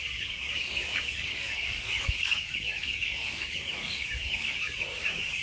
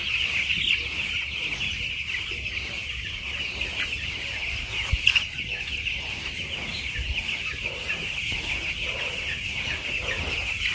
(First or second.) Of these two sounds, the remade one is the first